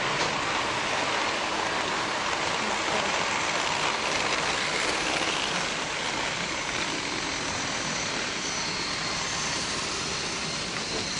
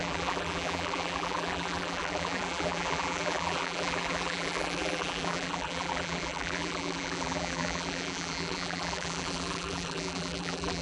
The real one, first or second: first